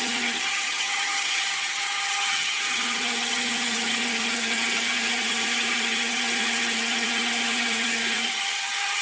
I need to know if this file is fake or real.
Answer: fake